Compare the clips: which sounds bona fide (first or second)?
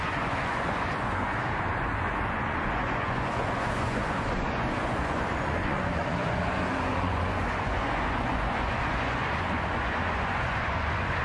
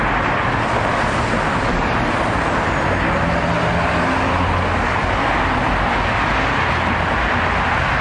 second